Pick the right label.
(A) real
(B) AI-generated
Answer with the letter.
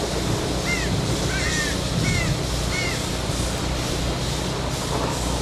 A